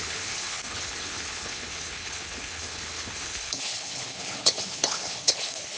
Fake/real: fake